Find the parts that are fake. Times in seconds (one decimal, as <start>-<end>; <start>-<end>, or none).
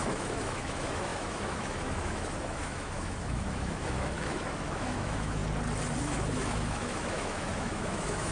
0.0-5.4; 6.0-8.3